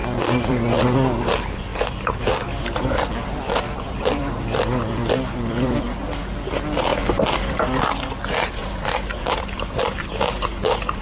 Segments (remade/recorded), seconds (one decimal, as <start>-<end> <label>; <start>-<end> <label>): 0.0-0.8 remade; 0.8-1.7 recorded; 1.7-5.8 remade; 5.8-6.9 recorded; 6.9-7.6 remade; 7.6-8.6 recorded; 8.6-9.8 remade; 9.8-11.0 recorded